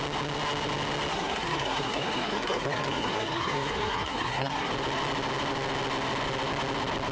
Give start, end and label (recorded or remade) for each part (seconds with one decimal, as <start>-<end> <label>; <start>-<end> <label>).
0.0-1.1 recorded; 1.1-4.7 remade; 4.7-7.1 recorded